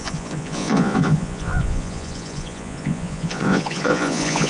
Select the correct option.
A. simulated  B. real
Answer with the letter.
A